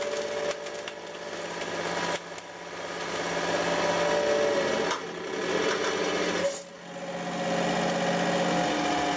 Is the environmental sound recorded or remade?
recorded